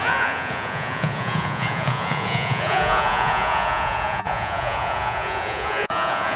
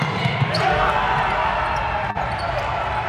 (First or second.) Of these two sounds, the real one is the second